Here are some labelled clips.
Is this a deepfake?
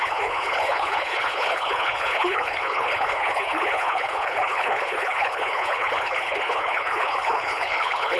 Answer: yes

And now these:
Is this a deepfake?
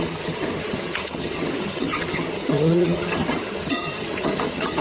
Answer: yes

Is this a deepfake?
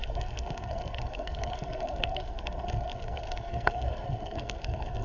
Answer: yes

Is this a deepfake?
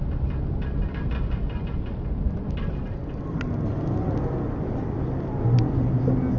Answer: no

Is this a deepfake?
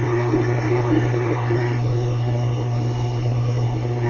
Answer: yes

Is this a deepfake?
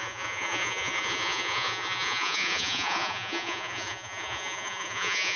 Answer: yes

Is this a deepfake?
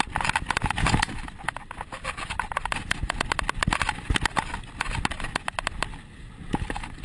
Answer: no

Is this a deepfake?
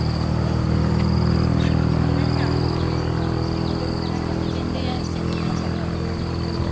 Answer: no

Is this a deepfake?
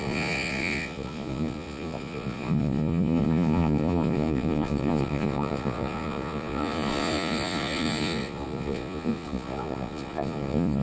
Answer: yes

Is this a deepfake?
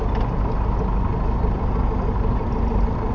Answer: no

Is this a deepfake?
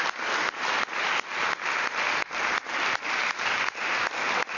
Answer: no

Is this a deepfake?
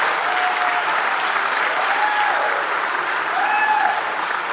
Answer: no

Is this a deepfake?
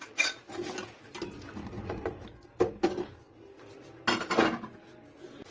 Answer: no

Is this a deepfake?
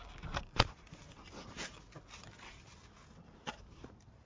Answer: no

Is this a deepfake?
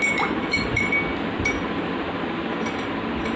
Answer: no